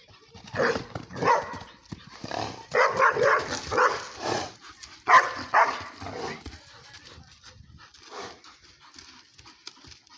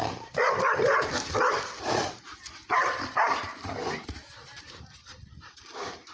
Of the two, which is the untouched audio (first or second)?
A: first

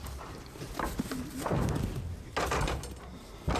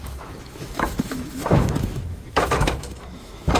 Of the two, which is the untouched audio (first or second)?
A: first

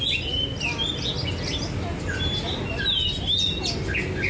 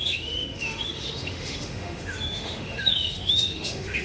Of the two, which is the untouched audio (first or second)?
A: first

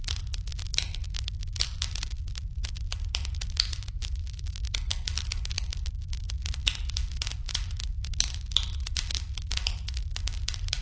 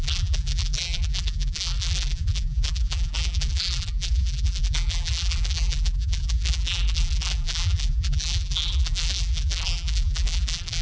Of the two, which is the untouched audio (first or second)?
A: first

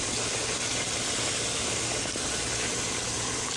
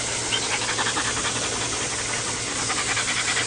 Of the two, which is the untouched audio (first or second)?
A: first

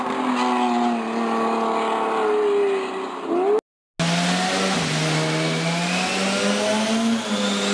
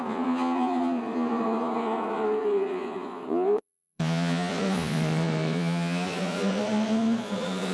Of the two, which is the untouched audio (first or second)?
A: first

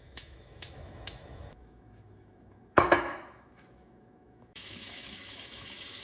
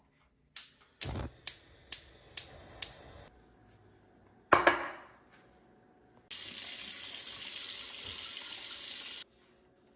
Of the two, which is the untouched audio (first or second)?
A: second